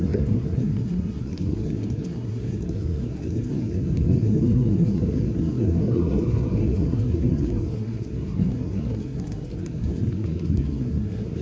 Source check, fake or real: fake